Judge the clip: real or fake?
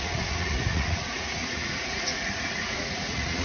fake